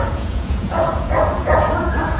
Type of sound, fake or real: fake